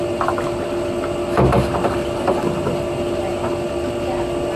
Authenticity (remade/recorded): recorded